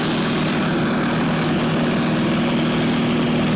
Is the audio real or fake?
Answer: real